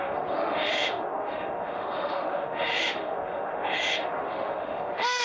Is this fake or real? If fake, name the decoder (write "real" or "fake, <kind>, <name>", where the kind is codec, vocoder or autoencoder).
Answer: fake, autoencoder, DAC-VAE